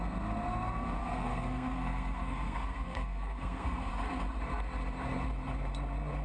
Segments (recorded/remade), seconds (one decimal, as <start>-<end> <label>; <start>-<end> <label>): 0.0-1.0 recorded; 1.0-3.9 remade; 3.9-6.2 recorded